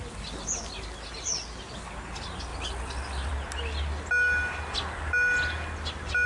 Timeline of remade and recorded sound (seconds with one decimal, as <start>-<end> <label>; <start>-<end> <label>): 0.0-6.3 recorded